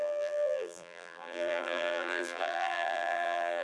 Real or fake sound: fake